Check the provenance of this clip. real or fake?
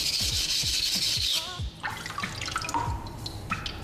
real